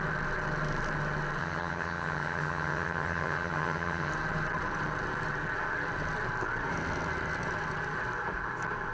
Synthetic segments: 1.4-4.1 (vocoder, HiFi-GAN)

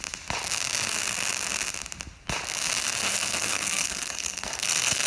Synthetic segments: 3.1-5.1 (codec, SNAC)

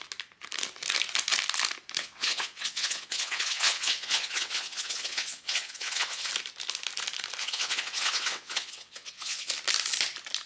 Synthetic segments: 2.0-6.3 (vocoder, WaveNeXt); 7.4-9.5

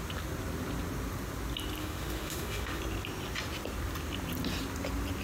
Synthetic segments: 1.8-2.8 (autoencoder, DAC-VAE)

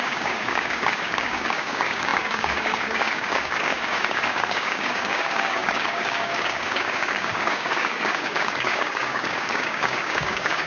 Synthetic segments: 0.0-10.7 (codec, DAC)